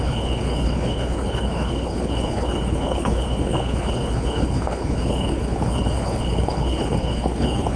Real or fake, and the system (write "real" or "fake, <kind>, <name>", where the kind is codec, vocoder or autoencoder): fake, codec, HILCodec